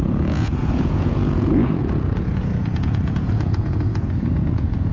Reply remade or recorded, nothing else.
remade